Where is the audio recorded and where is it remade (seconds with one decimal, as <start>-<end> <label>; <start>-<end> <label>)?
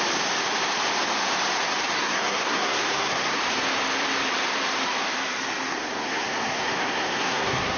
0.0-2.0 recorded; 2.0-3.4 remade; 3.4-5.7 recorded; 5.7-7.8 remade